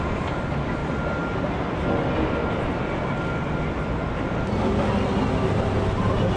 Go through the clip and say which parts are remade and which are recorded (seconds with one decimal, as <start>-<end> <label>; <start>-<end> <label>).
0.0-6.4 recorded